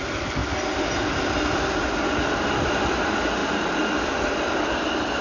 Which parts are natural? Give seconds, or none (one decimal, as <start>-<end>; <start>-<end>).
0.0-5.2